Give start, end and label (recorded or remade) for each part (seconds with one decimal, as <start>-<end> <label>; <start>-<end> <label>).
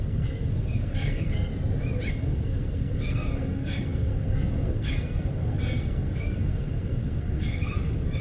0.0-1.5 remade; 1.5-2.1 recorded; 2.1-8.2 remade